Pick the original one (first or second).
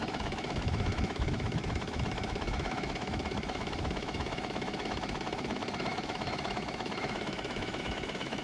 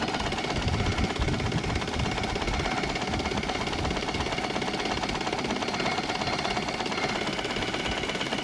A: second